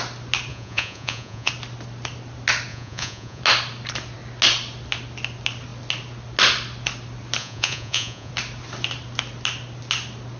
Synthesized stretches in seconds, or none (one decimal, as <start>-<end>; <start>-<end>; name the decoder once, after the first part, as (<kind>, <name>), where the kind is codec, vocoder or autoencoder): 0.5-1.5 (vocoder, Vocos); 2.7-3.4; 7.4-8.3